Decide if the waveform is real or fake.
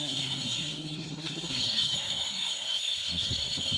fake